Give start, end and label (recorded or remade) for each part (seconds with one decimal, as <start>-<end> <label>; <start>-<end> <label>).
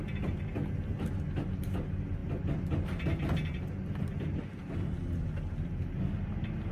0.0-6.7 recorded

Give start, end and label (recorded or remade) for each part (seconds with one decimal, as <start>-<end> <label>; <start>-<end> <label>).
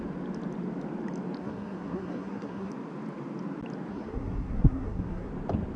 0.0-1.4 recorded; 1.4-2.7 remade; 2.7-3.9 recorded; 3.9-5.3 remade; 5.3-5.8 recorded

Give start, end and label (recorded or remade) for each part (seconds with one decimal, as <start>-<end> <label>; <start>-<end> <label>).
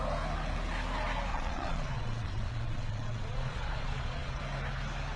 0.0-1.3 recorded; 1.3-4.4 remade; 4.4-5.2 recorded